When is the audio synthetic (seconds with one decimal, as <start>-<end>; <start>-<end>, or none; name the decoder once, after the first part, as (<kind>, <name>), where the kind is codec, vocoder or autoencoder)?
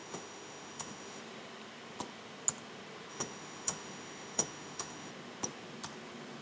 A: 0.0-1.2 (autoencoder, DAC-VAE); 3.1-5.1